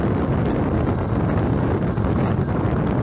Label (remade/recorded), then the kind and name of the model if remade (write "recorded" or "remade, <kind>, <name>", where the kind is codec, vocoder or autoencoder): recorded